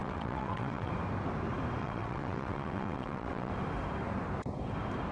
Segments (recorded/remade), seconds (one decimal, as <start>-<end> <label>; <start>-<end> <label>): 0.0-0.9 remade; 0.9-1.8 recorded; 1.8-3.5 remade; 3.5-5.1 recorded